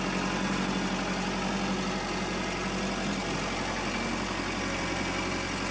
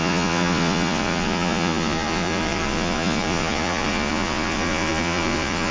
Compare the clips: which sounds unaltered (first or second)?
first